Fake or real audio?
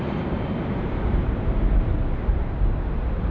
real